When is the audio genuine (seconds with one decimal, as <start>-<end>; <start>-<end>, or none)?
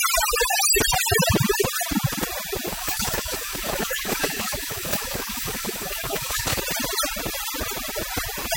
0.0-2.7; 6.6-8.6